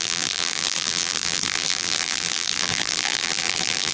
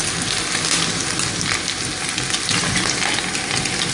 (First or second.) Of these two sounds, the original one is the second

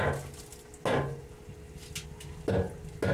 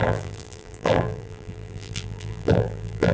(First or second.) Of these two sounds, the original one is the first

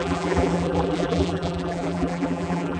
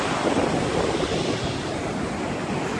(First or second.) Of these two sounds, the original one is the second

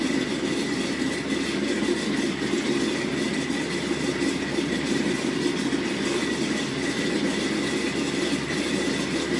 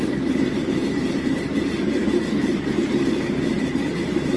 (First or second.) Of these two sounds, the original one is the first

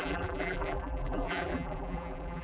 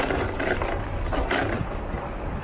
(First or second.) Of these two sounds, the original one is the second